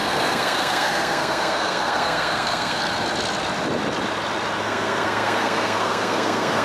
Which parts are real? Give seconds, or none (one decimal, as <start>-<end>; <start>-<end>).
2.8-4.6